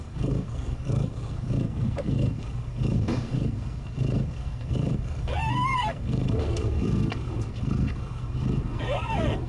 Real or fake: fake